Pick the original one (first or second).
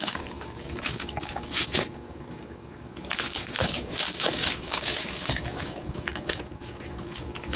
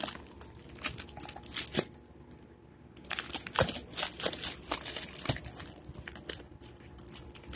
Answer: second